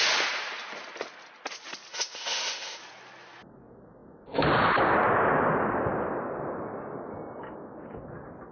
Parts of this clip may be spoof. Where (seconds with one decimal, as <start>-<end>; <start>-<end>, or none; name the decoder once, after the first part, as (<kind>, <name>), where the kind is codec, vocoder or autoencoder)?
1.9-2.8 (autoencoder, DAC-VAE)